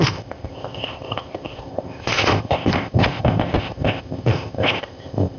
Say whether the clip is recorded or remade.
remade